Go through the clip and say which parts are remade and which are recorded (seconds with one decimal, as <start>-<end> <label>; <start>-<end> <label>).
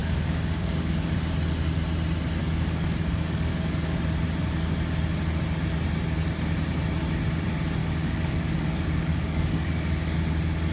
0.0-1.1 remade; 1.1-2.4 recorded; 2.4-4.0 remade; 4.0-7.8 recorded; 7.8-10.2 remade; 10.2-10.7 recorded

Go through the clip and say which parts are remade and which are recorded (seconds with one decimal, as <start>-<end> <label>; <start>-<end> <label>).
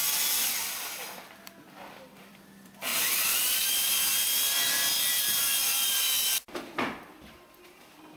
0.0-2.9 remade; 2.9-3.6 recorded; 3.6-8.2 remade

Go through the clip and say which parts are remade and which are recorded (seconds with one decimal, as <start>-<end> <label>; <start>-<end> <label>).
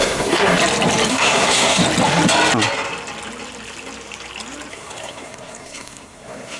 0.0-0.5 remade; 0.5-1.1 recorded; 1.1-1.8 remade; 1.8-4.7 recorded; 4.7-6.6 remade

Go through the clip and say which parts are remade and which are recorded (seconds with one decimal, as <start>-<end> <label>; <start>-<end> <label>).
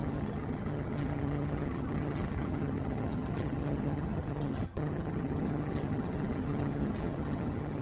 0.0-7.8 remade